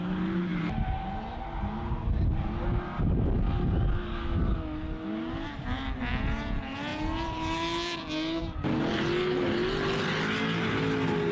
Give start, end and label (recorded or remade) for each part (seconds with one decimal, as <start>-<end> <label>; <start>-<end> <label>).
0.0-11.3 recorded